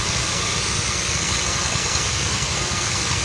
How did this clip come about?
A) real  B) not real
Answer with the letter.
B